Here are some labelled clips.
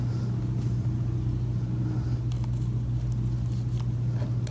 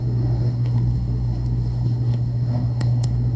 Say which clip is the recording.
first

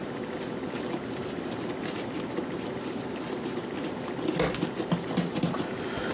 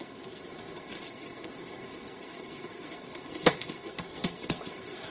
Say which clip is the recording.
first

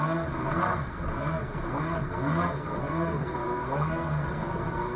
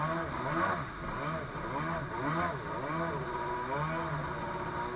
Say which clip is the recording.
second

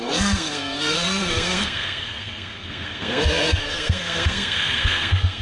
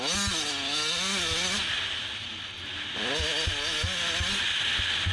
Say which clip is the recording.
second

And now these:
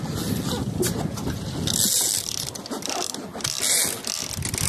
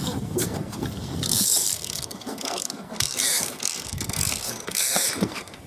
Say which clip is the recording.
first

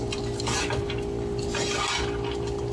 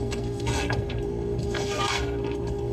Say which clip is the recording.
first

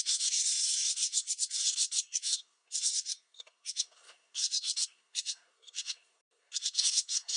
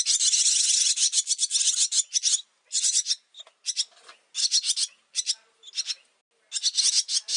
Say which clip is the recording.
second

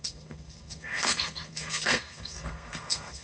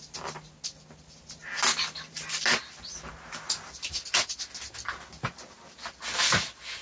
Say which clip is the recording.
second